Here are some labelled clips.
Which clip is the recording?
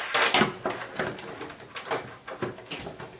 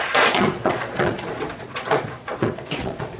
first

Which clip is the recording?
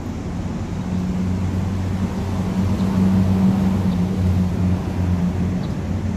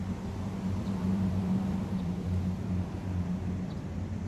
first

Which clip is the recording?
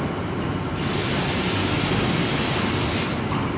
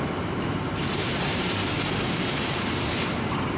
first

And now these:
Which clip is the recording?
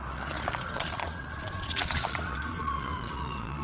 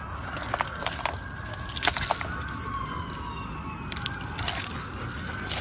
second